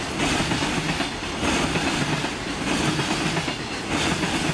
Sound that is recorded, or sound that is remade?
recorded